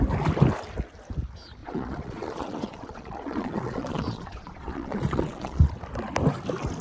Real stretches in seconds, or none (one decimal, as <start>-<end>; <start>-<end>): 0.0-1.6; 5.7-6.8